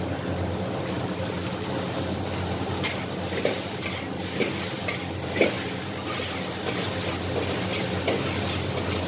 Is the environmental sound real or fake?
real